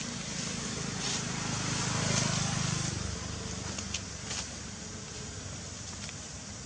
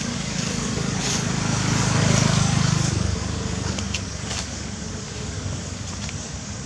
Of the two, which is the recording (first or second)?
first